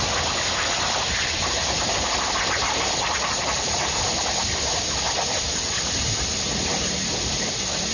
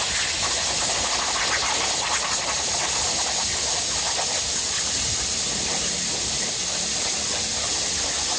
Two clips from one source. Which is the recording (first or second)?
second